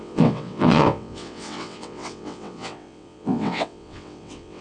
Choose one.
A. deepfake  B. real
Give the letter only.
A